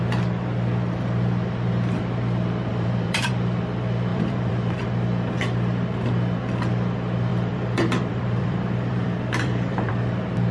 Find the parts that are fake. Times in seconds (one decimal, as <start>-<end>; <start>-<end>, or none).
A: 2.7-3.3; 4.1-4.7; 7.3-9.9